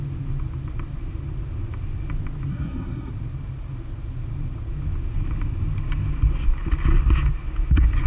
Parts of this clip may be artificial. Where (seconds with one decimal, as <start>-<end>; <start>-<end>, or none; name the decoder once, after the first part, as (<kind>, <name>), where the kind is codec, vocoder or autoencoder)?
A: 2.5-3.1 (codec, SNAC)